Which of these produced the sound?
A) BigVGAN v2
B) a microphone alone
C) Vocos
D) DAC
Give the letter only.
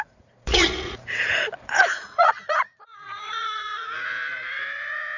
C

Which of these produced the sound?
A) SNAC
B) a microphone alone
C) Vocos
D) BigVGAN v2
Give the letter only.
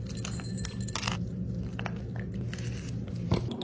B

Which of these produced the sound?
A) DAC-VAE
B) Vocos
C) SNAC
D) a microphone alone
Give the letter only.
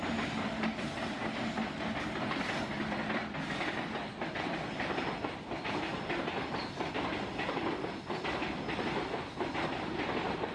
D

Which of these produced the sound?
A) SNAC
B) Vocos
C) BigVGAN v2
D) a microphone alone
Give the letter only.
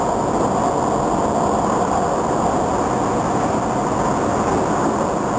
D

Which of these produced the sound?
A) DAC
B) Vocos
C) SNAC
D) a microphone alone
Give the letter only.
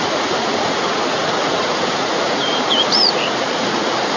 B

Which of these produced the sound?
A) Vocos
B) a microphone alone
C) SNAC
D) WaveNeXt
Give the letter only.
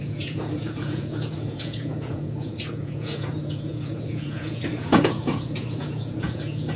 A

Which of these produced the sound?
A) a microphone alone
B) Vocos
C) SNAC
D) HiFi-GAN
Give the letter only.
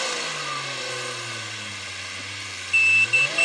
A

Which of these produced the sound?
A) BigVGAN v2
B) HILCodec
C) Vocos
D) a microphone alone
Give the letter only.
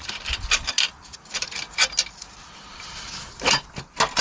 D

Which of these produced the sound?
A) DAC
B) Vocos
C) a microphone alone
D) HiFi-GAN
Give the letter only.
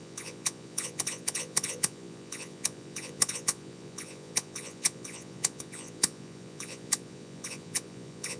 B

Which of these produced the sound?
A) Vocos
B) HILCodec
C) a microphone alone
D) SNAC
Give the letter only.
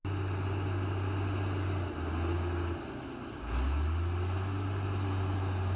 C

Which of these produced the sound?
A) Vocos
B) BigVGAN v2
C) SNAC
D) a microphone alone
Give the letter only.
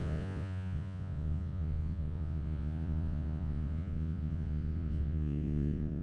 A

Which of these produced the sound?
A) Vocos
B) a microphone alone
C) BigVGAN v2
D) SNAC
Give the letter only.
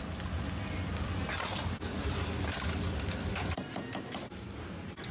B